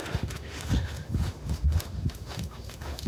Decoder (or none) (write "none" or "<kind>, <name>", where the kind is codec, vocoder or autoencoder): autoencoder, DAC-VAE